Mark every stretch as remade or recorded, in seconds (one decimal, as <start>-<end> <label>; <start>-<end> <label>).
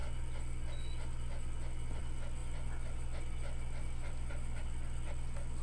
0.0-5.6 recorded